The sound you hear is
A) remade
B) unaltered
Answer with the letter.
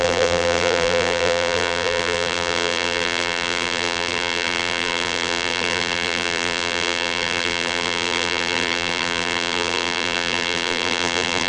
A